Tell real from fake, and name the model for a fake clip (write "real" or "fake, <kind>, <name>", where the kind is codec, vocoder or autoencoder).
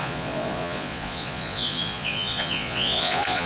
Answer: fake, vocoder, Vocos